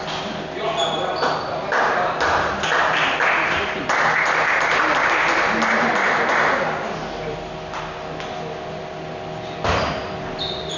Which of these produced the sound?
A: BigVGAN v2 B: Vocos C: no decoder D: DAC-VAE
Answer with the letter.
C